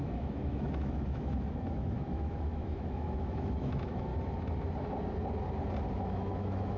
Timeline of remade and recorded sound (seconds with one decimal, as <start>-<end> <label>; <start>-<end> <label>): 0.0-4.1 remade; 4.1-5.9 recorded; 5.9-6.8 remade